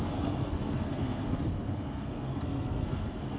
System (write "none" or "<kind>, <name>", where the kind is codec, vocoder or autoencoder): codec, SNAC